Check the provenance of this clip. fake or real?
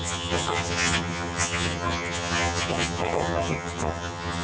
fake